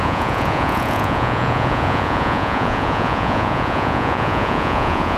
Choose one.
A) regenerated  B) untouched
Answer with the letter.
A